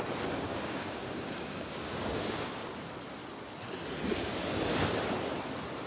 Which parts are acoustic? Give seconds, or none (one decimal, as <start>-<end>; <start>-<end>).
0.0-0.5; 2.7-5.9